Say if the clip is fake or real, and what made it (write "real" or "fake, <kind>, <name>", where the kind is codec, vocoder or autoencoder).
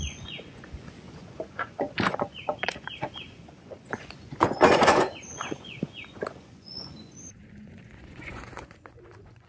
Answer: fake, vocoder, Vocos